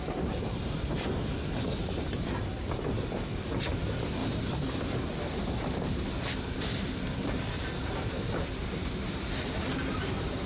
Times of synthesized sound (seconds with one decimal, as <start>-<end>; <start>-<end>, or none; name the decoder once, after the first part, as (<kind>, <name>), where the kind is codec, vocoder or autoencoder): 4.2-9.1 (vocoder, BigVGAN v2)